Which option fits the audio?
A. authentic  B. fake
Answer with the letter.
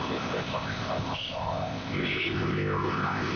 B